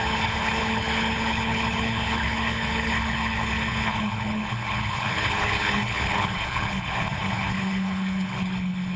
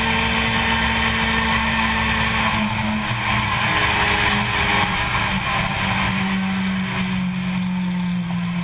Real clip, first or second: second